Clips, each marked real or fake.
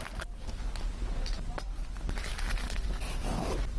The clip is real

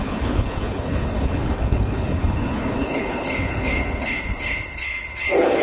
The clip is fake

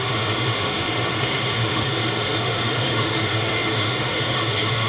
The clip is fake